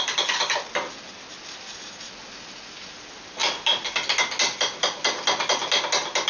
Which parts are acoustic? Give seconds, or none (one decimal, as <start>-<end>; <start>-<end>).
0.0-6.3